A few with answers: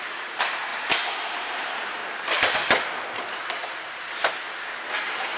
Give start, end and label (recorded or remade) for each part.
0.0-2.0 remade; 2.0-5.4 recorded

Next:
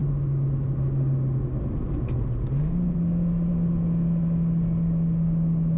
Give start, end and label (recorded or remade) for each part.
0.0-5.8 recorded